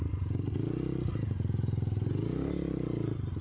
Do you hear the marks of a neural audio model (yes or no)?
no